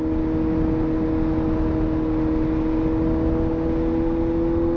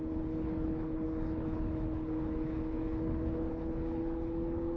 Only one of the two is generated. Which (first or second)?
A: second